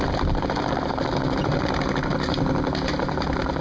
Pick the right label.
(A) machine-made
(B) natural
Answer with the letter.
B